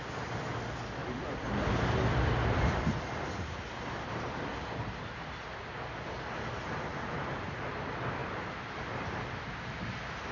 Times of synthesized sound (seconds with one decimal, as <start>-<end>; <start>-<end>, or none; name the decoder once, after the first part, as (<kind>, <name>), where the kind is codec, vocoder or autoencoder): 6.9-7.6 (vocoder, BigVGAN v2); 8.2-9.8